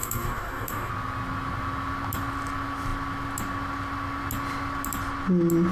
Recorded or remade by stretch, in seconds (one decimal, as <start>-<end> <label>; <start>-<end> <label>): 0.0-0.9 remade; 0.9-5.7 recorded